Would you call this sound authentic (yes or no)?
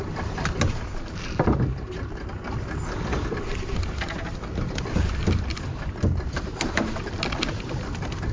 yes